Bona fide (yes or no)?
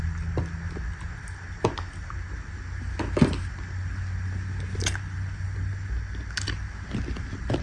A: yes